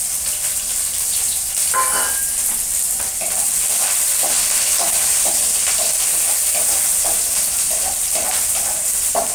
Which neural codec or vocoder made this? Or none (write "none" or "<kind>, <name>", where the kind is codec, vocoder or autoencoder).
none